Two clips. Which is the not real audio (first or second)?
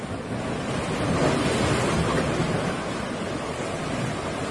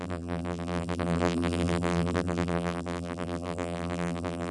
second